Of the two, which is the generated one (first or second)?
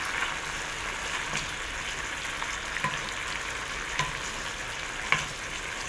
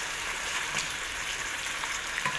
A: second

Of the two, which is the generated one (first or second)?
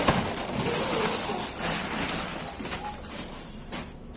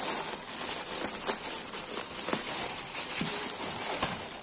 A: second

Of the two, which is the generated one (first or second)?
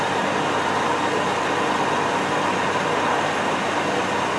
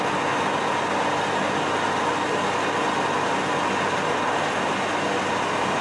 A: first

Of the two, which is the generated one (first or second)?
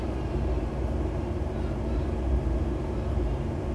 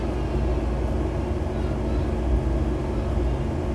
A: first